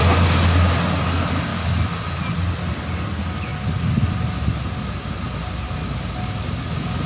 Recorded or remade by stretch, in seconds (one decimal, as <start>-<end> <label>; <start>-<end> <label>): 0.0-7.1 recorded